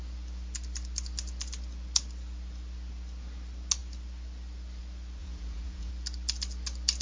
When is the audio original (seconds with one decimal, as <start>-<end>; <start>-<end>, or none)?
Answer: 0.0-5.2; 5.9-7.0